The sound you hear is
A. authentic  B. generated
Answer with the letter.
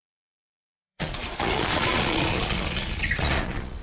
B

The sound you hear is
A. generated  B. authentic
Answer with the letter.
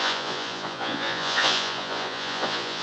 A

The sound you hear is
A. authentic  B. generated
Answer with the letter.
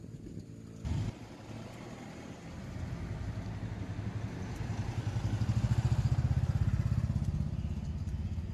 A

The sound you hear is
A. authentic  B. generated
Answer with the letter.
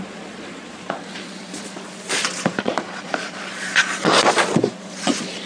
B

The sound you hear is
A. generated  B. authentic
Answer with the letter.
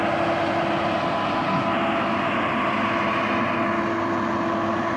B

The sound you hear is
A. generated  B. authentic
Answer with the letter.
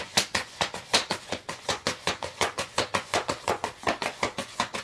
A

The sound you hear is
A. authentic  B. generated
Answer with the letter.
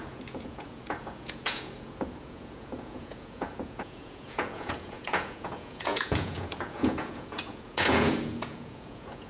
B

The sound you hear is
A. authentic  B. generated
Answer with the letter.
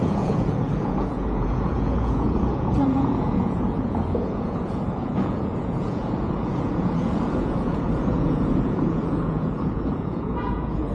B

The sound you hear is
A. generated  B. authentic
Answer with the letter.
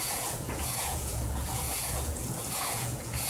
A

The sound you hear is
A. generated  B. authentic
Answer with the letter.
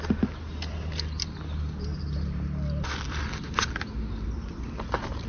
B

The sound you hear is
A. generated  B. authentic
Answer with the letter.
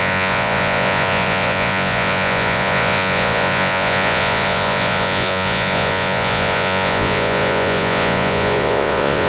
A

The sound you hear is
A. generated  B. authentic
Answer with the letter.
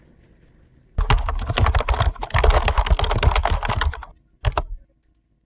B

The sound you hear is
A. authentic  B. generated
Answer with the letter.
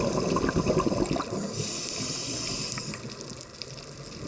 A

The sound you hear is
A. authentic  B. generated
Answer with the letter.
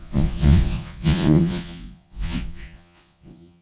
B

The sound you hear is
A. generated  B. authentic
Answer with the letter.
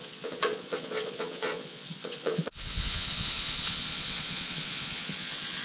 A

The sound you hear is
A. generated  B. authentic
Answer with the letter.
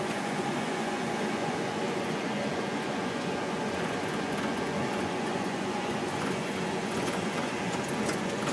A